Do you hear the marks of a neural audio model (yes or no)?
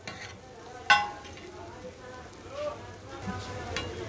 no